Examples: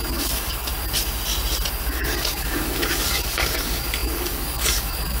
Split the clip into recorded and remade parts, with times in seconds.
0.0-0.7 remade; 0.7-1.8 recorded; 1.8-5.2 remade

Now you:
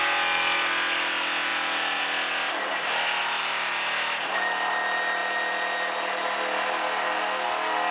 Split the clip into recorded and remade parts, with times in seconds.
0.0-7.9 recorded

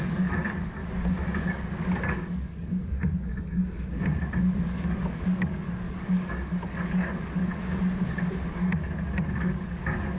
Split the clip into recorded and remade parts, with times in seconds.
0.0-0.8 remade; 0.8-1.4 recorded; 1.4-3.6 remade; 3.6-4.6 recorded; 4.6-7.4 remade; 7.4-8.5 recorded; 8.5-10.2 remade

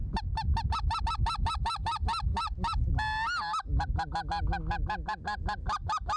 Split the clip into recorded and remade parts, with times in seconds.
0.0-6.2 recorded

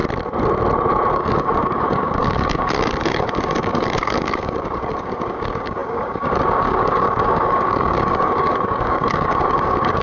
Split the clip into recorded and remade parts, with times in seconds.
0.0-1.1 recorded; 1.1-10.0 remade

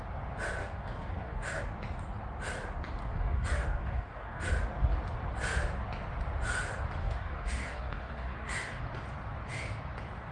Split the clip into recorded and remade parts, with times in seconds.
0.0-0.6 recorded; 0.6-1.6 remade; 1.6-3.0 recorded; 3.0-4.5 remade; 4.5-7.0 recorded; 7.0-8.8 remade; 8.8-10.3 recorded

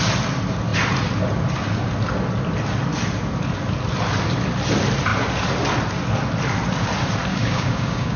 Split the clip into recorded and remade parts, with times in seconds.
0.0-7.3 recorded; 7.3-8.2 remade